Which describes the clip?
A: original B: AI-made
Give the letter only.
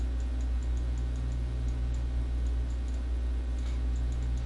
A